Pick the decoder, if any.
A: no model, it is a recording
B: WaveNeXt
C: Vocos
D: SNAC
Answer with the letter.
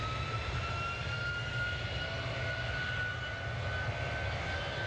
A